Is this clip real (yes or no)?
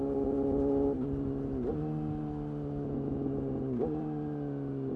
yes